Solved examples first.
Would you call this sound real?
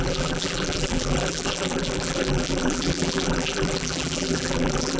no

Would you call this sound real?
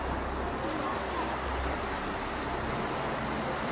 yes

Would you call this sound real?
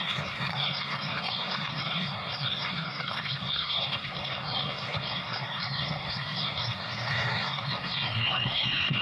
no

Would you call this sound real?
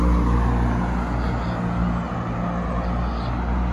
yes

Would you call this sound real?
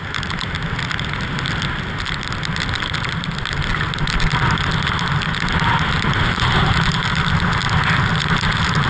yes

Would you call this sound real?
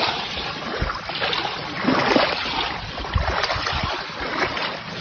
yes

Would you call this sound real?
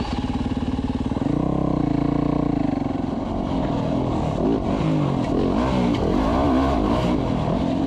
yes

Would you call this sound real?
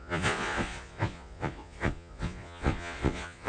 no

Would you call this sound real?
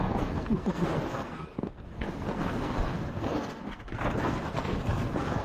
no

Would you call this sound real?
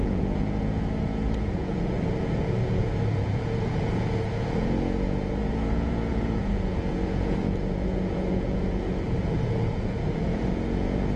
no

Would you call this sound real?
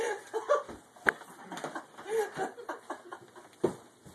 yes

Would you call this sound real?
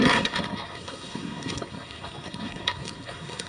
no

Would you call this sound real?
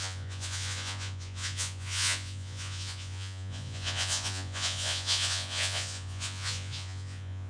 no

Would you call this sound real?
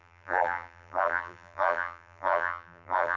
no